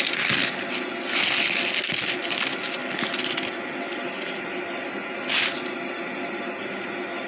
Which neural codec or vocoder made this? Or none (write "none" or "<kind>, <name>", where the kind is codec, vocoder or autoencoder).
none